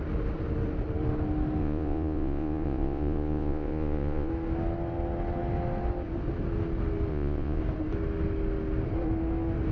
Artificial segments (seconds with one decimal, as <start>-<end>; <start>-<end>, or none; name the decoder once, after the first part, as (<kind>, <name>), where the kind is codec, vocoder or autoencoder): 1.6-4.3 (vocoder, Vocos); 7.1-7.6